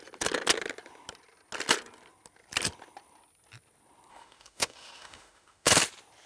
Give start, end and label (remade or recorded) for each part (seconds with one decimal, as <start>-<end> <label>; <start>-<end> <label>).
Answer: 0.0-4.1 recorded; 4.1-5.7 remade; 5.7-6.3 recorded